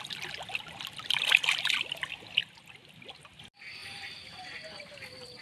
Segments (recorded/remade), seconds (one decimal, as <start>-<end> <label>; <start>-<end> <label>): 0.0-5.4 recorded